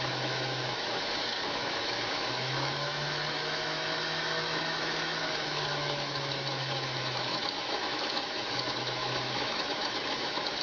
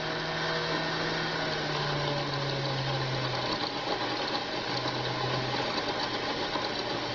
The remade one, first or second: first